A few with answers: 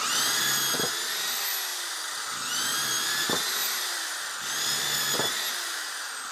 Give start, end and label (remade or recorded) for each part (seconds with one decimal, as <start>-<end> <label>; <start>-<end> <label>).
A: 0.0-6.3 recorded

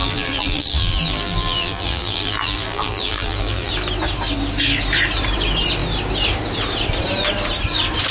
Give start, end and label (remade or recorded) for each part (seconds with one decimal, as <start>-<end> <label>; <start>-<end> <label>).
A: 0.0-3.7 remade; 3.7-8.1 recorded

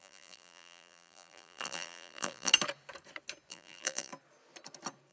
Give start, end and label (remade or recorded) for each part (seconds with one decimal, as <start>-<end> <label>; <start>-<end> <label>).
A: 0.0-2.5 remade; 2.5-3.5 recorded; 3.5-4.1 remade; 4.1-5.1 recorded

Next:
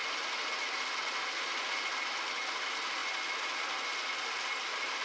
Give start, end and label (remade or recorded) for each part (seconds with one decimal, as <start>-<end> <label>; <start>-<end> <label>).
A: 0.0-5.0 recorded

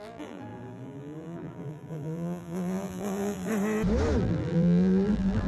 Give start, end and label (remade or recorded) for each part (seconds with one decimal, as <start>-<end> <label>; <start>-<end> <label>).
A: 0.0-3.5 remade; 3.5-4.2 recorded; 4.2-5.5 remade

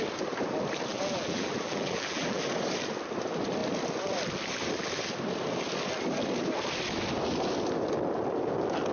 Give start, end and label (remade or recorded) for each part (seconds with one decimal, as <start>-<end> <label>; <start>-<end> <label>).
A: 0.0-0.9 recorded; 0.9-2.4 remade; 2.4-8.9 recorded